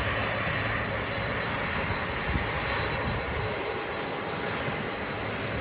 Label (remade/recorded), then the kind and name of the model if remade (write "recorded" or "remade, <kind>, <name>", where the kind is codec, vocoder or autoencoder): recorded